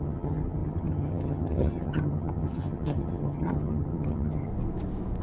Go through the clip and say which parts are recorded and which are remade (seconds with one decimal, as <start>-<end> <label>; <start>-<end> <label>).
0.0-4.5 remade; 4.5-5.2 recorded